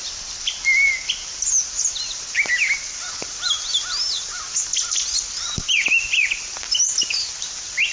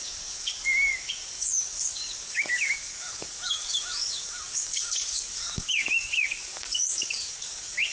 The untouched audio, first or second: first